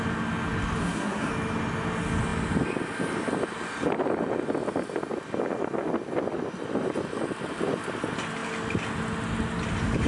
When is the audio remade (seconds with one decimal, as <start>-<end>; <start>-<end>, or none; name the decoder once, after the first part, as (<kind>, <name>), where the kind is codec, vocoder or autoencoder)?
0.8-1.3 (codec, SNAC)